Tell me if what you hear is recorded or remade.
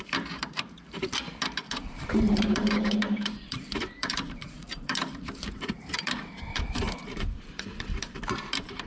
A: remade